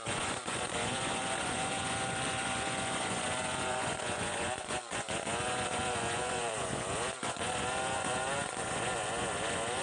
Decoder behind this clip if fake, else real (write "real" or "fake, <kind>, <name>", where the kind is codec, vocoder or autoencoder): fake, vocoder, Vocos